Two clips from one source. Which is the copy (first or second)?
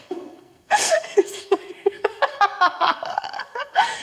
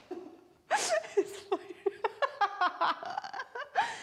first